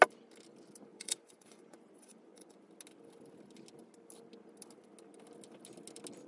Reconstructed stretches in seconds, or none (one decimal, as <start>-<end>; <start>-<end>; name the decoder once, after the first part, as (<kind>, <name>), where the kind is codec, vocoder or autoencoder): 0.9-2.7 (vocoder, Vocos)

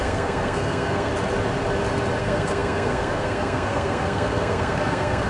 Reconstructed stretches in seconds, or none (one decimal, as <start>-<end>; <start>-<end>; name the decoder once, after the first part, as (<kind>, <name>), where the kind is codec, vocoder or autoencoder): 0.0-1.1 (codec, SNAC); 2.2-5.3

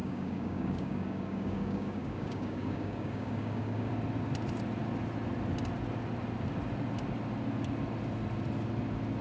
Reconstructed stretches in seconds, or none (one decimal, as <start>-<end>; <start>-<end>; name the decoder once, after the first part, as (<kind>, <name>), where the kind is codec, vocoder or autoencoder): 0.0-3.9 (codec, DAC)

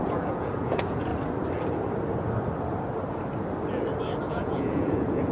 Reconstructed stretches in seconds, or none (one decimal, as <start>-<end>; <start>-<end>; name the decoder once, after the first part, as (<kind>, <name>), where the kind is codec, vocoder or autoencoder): 0.0-1.1 (vocoder, Vocos); 4.3-5.3

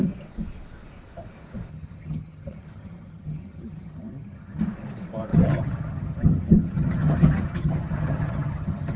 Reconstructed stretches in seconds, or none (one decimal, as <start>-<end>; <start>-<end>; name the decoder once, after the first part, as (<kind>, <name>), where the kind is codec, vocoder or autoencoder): 1.7-4.6 (vocoder, HiFi-GAN); 5.3-9.0

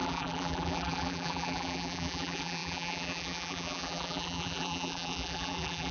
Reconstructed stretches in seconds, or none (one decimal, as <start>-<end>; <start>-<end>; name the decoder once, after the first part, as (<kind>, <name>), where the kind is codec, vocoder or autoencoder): 0.0-5.9 (vocoder, BigVGAN v2)